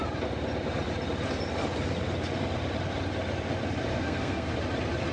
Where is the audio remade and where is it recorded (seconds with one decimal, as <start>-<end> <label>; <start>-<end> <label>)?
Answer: 0.0-3.9 recorded; 3.9-4.5 remade; 4.5-5.1 recorded